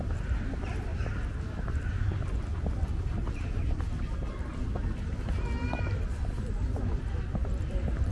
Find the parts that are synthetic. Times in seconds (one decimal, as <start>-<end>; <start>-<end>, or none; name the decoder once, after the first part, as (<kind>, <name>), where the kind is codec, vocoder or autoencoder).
none